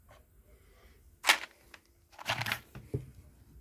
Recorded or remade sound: recorded